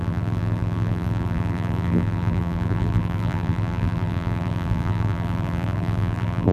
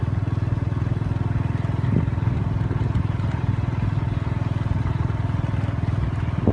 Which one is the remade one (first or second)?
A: first